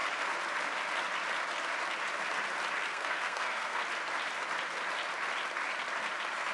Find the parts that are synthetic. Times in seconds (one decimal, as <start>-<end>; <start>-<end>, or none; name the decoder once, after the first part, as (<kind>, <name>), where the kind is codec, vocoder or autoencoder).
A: 2.9-3.8 (codec, SNAC)